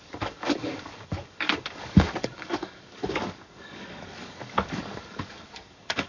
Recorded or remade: remade